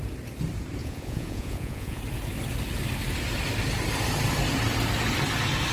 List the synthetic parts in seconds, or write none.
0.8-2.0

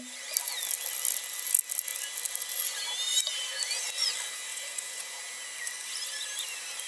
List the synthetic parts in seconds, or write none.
4.5-5.2

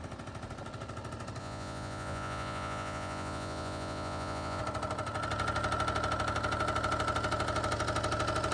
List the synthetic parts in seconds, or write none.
1.4-4.6

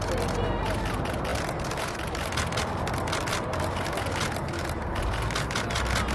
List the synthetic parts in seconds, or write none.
none

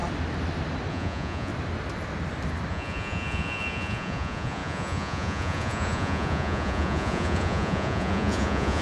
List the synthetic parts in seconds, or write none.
0.9-1.5; 2.7-8.8